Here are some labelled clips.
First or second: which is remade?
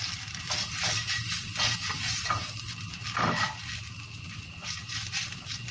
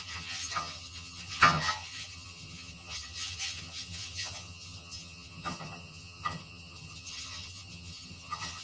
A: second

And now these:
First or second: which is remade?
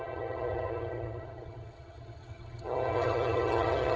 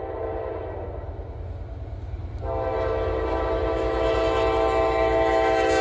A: first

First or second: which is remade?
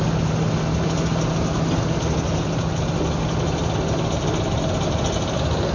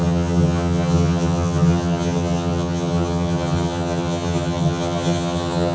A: second